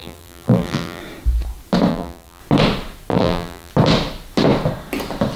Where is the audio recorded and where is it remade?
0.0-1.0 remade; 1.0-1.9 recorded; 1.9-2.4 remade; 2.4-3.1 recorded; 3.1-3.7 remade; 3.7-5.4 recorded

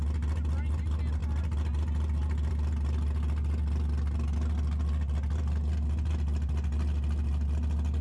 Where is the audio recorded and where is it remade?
0.0-8.0 recorded

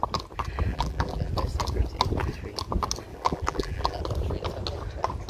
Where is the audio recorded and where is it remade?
0.0-0.7 recorded; 0.7-1.3 remade; 1.3-3.1 recorded; 3.1-4.0 remade; 4.0-5.3 recorded

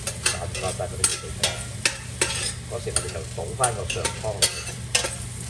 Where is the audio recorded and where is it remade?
0.0-5.5 recorded